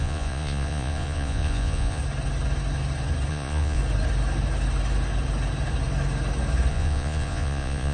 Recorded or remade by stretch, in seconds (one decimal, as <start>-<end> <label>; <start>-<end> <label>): 0.0-2.0 remade; 2.0-3.3 recorded; 3.3-3.8 remade; 3.8-6.7 recorded; 6.7-7.9 remade